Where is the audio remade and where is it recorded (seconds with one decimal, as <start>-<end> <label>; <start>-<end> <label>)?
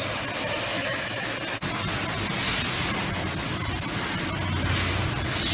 0.0-0.7 recorded; 0.7-1.3 remade; 1.3-5.5 recorded